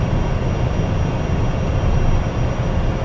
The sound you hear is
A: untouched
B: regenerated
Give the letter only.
A